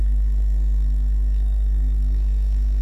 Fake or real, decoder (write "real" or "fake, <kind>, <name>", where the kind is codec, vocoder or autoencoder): fake, codec, SNAC